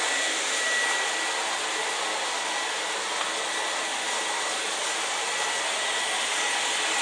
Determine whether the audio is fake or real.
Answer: real